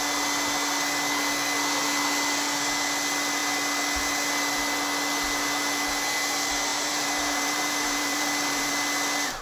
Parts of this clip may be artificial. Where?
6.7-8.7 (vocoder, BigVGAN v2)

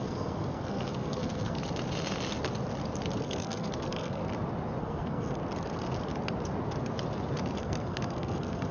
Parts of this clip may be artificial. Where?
0.0-1.6 (codec, SNAC); 3.2-4.2; 4.8-5.4; 7.6-8.7

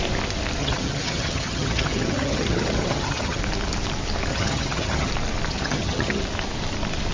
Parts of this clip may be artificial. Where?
0.6-3.4 (vocoder, HiFi-GAN); 4.3-5.1; 5.5-6.2

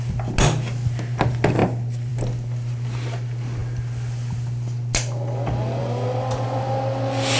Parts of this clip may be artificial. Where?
none

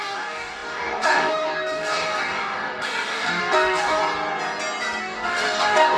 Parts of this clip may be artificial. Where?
0.0-4.0 (codec, DAC); 5.0-6.0

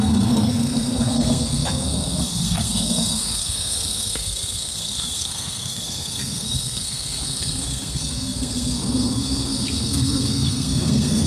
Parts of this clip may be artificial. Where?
0.0-11.3 (codec, SNAC)

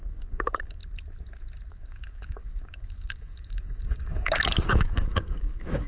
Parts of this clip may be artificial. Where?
0.0-0.8 (codec, DAC); 1.7-5.9

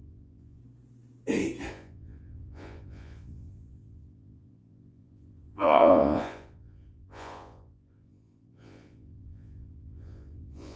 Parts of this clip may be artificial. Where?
0.0-0.6 (vocoder, Vocos); 1.7-10.8